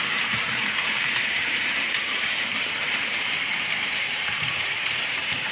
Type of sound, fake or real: fake